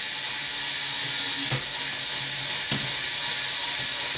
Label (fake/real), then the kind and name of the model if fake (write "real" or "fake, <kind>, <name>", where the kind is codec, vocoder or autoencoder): real